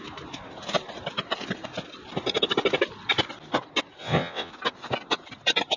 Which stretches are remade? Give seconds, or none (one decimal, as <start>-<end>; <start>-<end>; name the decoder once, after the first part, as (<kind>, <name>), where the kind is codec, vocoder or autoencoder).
4.0-4.5 (vocoder, WaveNeXt)